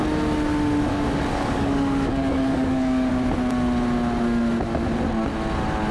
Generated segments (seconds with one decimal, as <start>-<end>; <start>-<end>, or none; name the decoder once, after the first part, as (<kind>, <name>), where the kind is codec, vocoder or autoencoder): 0.9-3.1 (codec, DAC)